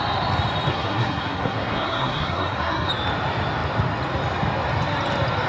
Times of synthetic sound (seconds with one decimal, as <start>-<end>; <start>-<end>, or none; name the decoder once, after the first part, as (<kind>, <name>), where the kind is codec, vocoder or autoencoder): 0.7-2.9 (codec, SNAC)